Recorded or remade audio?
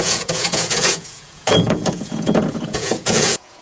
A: remade